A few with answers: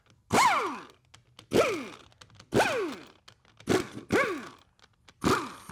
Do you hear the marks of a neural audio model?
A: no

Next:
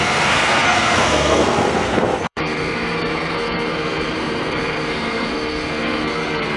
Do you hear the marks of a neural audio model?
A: yes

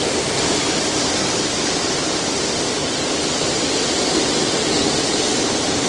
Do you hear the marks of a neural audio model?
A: no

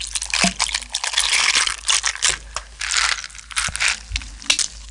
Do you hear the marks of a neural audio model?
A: no